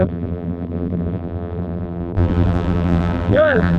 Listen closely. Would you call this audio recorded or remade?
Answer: remade